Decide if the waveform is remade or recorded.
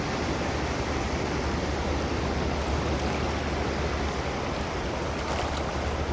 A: recorded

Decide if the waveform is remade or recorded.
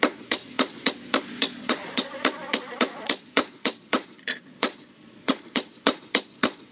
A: remade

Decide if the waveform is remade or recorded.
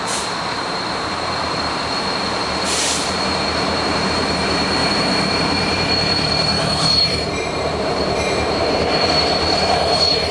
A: remade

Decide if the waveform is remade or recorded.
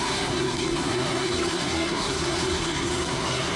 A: remade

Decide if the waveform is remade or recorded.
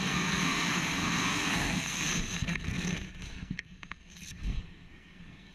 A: remade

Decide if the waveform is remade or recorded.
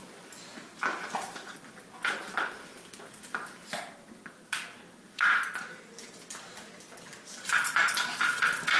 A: recorded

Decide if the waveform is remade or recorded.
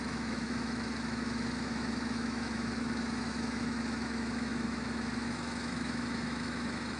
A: remade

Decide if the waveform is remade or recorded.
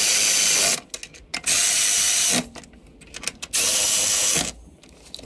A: recorded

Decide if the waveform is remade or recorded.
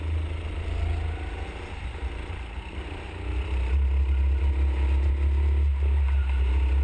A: recorded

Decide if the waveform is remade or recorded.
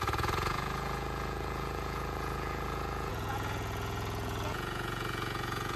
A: remade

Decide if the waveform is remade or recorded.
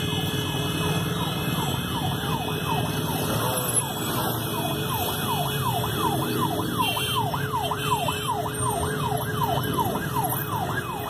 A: remade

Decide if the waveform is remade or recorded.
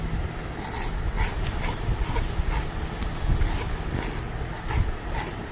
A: recorded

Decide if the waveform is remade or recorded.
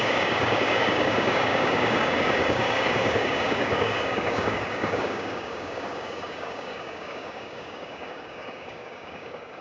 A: remade